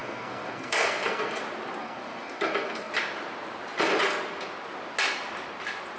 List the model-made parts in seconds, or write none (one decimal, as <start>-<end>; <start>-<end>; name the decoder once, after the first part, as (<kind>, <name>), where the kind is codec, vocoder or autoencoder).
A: 0.0-1.4 (codec, SNAC); 1.8-2.9